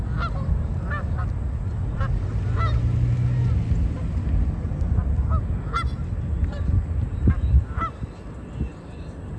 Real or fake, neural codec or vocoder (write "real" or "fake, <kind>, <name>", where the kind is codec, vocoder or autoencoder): real